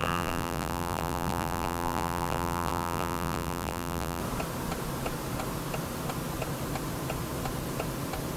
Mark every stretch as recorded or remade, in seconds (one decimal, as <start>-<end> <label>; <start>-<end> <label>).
0.0-4.2 remade; 4.2-8.4 recorded